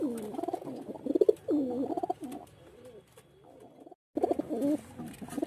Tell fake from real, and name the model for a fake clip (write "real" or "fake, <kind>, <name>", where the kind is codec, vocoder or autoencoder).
real